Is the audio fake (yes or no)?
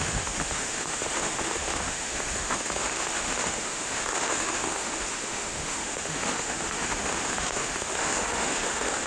yes